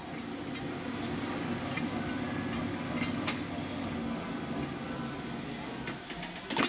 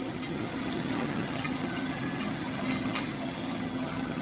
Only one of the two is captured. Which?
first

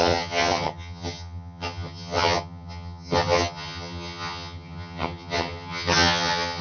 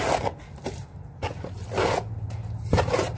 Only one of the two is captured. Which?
second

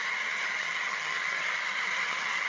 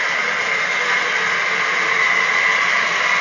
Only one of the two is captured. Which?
second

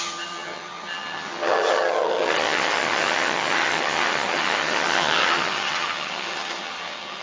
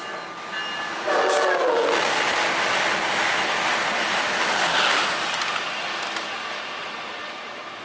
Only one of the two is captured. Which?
second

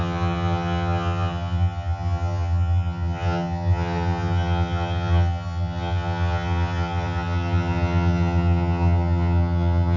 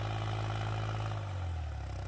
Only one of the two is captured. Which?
second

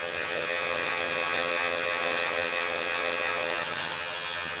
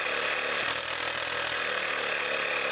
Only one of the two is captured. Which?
second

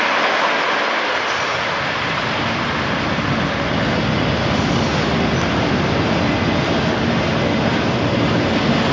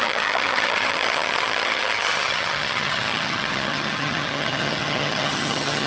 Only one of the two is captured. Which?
first